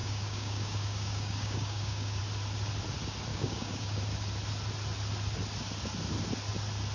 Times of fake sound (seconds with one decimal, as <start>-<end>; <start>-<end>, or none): 0.0-2.2; 3.3-4.0